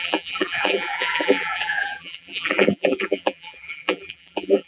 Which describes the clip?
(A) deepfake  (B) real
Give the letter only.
A